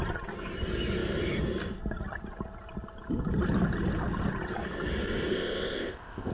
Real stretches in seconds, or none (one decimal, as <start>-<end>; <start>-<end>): 0.0-5.3